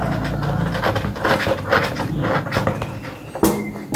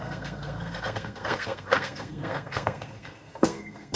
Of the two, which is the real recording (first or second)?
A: first